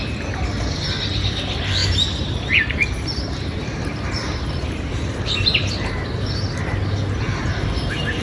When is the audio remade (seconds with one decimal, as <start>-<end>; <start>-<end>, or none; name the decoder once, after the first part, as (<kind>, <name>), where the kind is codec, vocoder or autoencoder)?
1.8-6.5 (vocoder, BigVGAN v2)